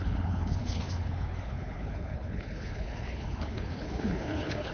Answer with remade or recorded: remade